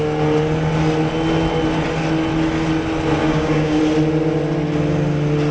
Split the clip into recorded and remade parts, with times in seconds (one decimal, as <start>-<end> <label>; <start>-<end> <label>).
0.0-3.2 recorded; 3.2-3.8 remade; 3.8-5.5 recorded

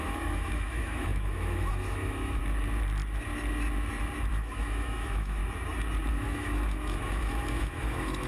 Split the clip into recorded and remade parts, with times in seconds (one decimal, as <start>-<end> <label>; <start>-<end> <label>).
0.0-2.4 remade; 2.4-4.3 recorded; 4.3-5.4 remade; 5.4-6.1 recorded; 6.1-8.3 remade